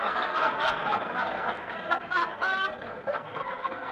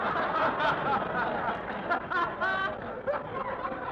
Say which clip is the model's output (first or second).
first